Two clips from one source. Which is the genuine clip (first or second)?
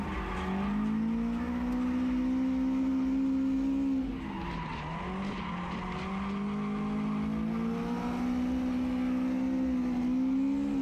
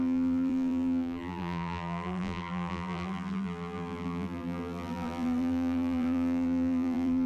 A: first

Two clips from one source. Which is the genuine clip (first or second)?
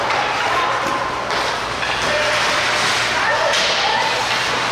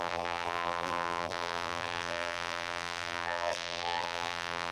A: first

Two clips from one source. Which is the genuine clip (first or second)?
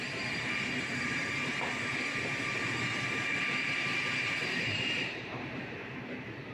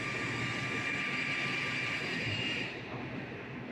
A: second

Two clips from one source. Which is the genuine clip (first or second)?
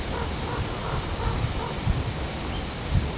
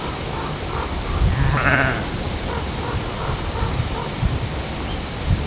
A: first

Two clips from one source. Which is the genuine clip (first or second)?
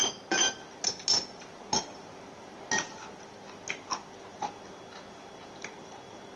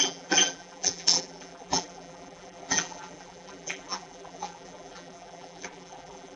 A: first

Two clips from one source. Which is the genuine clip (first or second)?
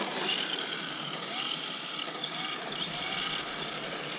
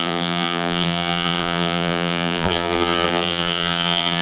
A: first